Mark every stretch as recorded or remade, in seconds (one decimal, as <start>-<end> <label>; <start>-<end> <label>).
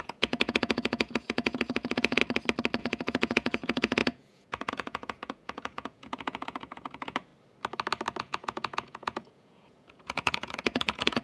0.0-2.2 remade; 2.2-2.8 recorded; 2.8-7.3 remade; 7.3-8.2 recorded; 8.2-11.2 remade